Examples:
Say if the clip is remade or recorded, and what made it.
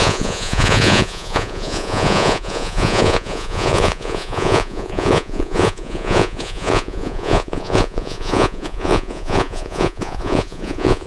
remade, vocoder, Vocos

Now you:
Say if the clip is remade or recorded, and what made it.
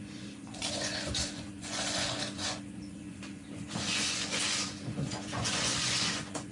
remade, vocoder, Vocos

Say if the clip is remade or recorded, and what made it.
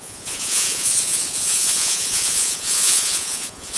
remade, vocoder, Vocos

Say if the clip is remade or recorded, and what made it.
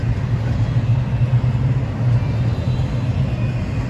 recorded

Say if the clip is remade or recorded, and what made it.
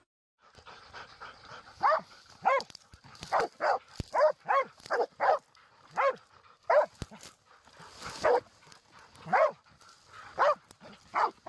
recorded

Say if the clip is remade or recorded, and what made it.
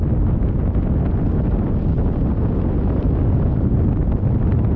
recorded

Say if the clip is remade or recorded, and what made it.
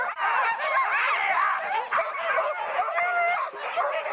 recorded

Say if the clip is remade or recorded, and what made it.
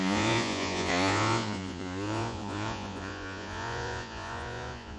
remade, vocoder, Vocos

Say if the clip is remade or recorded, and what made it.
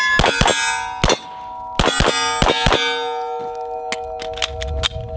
recorded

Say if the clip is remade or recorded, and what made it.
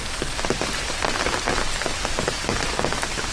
recorded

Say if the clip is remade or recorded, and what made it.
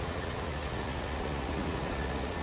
remade, vocoder, Vocos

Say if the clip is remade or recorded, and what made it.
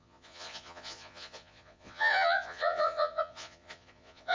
remade, vocoder, Vocos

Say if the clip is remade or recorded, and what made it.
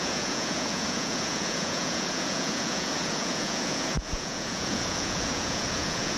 remade, vocoder, Vocos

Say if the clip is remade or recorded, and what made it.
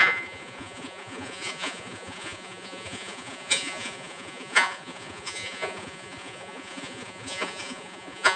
remade, vocoder, Vocos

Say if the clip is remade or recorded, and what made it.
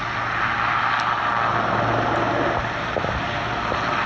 recorded